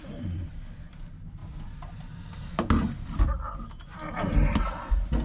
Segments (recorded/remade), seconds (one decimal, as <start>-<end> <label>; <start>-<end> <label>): 0.0-5.2 recorded